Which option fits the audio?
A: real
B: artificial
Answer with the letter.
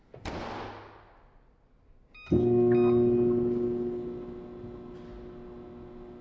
A